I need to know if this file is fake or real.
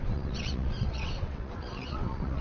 fake